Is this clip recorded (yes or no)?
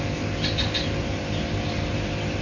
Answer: yes